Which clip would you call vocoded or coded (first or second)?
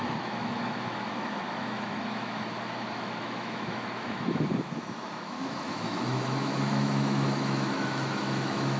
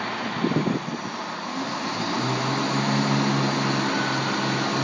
first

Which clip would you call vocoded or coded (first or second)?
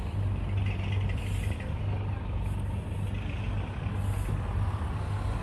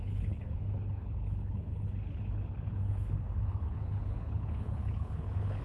second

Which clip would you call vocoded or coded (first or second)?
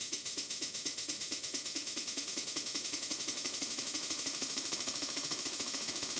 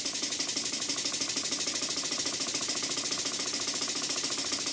first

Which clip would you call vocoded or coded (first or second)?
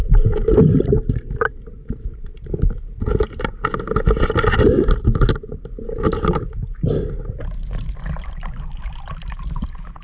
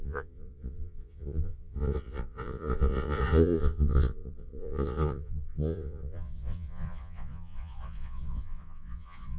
second